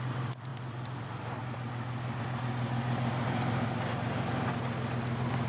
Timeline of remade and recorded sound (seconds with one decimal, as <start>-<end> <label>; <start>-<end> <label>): 0.0-5.5 recorded